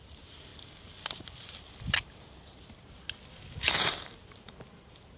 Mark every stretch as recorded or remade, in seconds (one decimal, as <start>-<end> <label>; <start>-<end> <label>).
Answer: 0.0-0.5 remade; 0.5-3.6 recorded; 3.6-5.2 remade